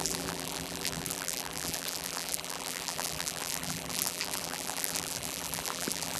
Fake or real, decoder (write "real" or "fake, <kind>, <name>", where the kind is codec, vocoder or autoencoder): fake, vocoder, BigVGAN v2